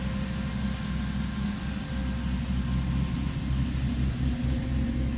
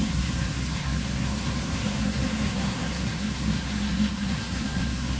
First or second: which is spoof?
second